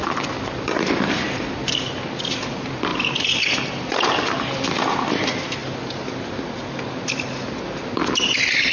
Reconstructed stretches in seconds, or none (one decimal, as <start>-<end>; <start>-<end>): none